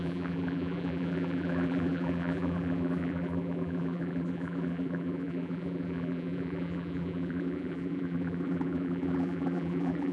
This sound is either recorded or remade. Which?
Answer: remade